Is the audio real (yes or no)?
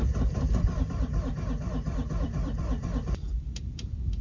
no